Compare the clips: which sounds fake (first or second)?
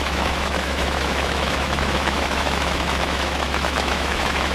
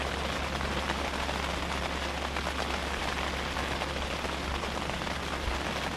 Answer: first